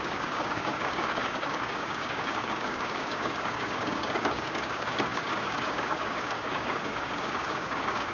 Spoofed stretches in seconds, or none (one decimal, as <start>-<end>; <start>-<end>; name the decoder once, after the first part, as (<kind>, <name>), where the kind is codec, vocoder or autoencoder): 0.0-8.1 (codec, DAC)